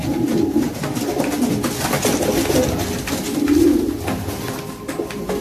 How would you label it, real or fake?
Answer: real